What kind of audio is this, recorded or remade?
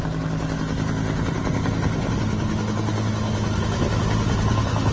recorded